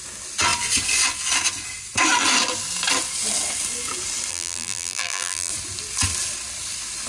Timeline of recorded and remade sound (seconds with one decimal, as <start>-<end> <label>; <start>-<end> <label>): 0.0-4.3 recorded; 4.3-5.5 remade; 5.5-7.1 recorded